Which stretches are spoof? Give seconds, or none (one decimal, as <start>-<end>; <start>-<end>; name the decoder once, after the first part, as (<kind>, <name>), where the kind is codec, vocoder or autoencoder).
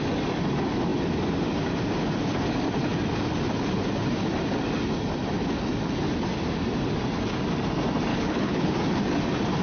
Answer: 8.1-8.7 (codec, HILCodec)